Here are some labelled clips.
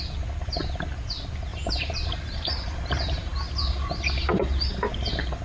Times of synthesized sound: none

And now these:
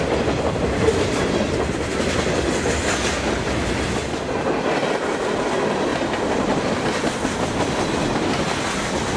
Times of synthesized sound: 5.9-6.6

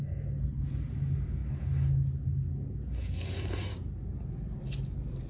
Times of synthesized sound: none

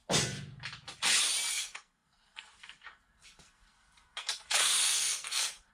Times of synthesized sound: 1.5-5.7

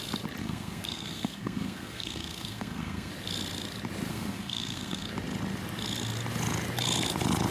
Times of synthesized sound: 0.4-3.1; 4.1-5.1

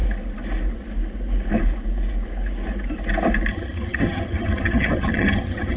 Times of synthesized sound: 3.5-5.8

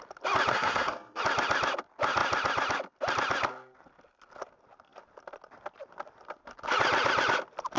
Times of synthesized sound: 0.5-1.2

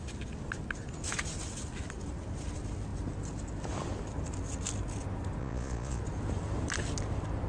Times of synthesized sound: 5.4-6.0